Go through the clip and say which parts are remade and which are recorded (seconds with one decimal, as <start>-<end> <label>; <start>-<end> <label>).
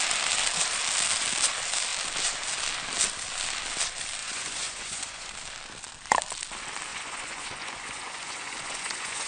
0.0-4.2 recorded; 4.2-5.3 remade; 5.3-6.9 recorded; 6.9-9.3 remade